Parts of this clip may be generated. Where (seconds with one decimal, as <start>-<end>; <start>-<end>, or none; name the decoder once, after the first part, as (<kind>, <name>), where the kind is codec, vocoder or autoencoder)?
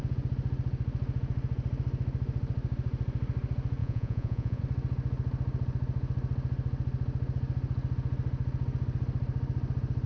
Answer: 3.8-4.6 (vocoder, Vocos)